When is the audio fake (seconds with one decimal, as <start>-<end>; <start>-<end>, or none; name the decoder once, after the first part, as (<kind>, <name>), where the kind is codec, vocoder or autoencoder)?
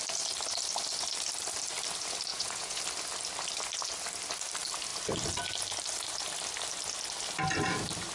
2.3-2.8 (vocoder, Vocos)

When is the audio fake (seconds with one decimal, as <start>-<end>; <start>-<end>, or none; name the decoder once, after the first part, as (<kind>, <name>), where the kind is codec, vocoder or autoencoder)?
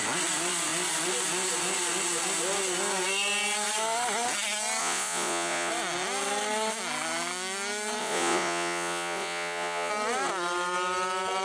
4.8-5.7 (vocoder, Vocos); 8.0-9.9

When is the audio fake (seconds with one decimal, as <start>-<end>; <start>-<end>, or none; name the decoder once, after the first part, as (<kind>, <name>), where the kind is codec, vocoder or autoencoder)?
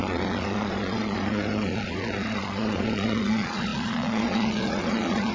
0.0-5.3 (vocoder, Vocos)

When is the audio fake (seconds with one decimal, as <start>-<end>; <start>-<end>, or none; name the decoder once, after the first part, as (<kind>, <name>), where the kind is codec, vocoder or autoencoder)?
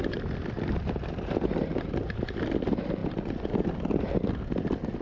none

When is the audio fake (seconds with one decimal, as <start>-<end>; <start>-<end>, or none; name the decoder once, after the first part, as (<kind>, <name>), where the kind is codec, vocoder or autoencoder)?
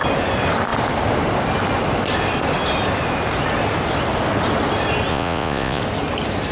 5.1-5.8 (vocoder, Vocos)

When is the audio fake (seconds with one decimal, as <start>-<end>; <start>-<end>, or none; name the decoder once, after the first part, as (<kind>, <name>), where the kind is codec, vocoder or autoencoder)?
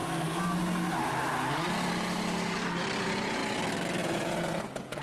3.0-3.4 (vocoder, Vocos); 4.0-5.0